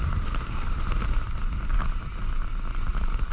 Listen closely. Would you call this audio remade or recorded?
recorded